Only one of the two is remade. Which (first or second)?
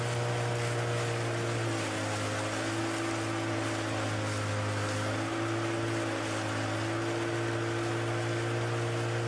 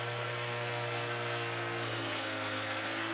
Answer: second